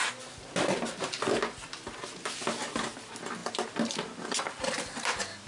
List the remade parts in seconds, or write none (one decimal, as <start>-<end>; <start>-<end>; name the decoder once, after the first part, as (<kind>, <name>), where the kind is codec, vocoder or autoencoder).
3.4-4.7 (vocoder, BigVGAN v2)